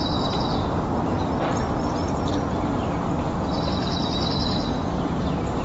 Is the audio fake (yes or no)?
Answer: no